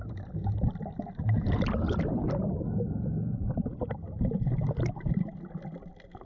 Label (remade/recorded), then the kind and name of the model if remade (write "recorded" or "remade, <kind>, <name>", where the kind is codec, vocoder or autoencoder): recorded